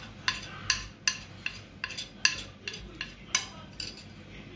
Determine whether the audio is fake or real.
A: real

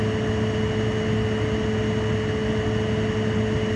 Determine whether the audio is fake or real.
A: real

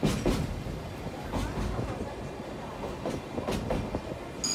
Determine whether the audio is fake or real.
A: real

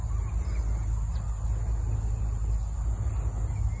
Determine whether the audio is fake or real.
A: real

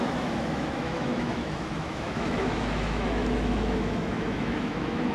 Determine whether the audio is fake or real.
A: fake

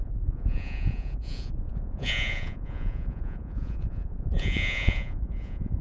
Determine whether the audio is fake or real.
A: fake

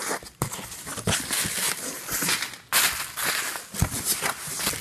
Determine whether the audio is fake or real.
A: real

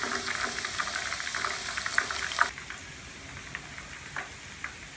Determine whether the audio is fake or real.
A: real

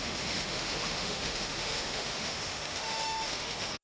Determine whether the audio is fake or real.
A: fake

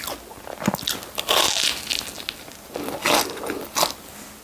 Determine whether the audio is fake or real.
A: real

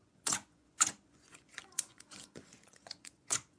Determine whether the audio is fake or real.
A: fake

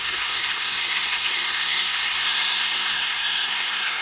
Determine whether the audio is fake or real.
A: fake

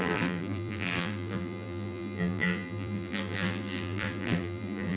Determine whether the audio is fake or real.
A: fake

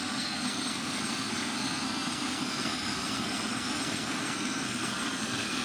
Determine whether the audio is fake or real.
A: fake